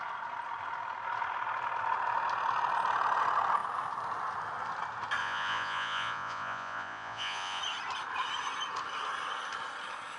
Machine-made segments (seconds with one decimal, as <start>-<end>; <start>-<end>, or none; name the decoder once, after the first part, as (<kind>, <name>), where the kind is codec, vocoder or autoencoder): 5.2-7.6 (vocoder, Vocos)